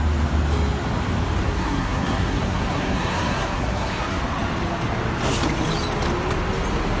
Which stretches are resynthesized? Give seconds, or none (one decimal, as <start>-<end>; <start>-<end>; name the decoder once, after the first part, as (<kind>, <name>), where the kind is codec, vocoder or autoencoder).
1.4-4.2 (codec, SNAC)